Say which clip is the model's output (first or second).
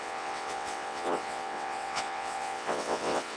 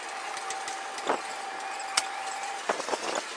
first